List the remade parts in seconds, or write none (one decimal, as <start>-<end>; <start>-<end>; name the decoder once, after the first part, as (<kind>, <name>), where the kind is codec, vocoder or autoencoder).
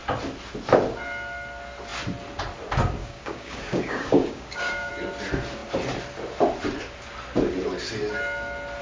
3.0-4.9 (codec, DAC)